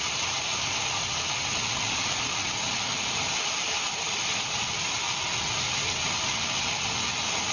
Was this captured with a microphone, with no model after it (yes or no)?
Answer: yes